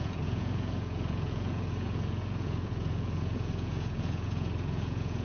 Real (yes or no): no